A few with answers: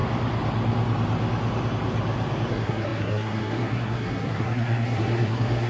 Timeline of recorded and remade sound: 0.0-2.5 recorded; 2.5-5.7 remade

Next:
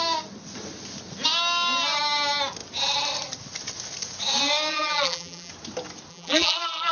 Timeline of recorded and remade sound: 0.0-4.7 recorded; 4.7-5.5 remade; 5.5-6.1 recorded; 6.1-6.9 remade

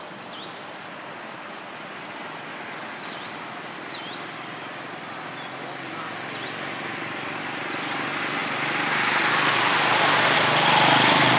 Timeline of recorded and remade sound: 0.0-11.4 recorded

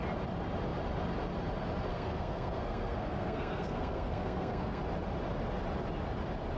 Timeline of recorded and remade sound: 0.0-1.9 recorded; 1.9-4.8 remade; 4.8-6.6 recorded

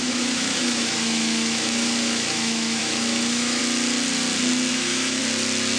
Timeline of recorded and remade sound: 0.0-3.6 remade; 3.6-4.7 recorded; 4.7-5.2 remade; 5.2-5.8 recorded

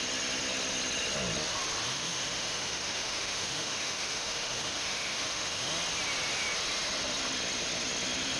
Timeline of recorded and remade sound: 0.0-1.9 recorded; 1.9-5.7 remade; 5.7-8.4 recorded

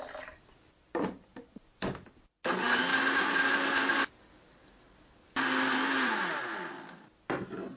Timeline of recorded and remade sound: 0.0-7.8 recorded